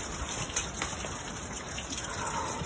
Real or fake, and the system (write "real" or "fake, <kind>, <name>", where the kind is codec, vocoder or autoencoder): real